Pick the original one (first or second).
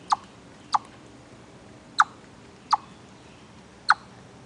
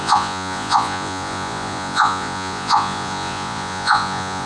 first